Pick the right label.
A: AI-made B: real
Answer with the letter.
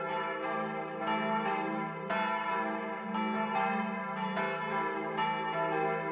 B